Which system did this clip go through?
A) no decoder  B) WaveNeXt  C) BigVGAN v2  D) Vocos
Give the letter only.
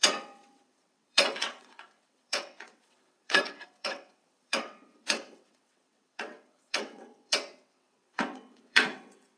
B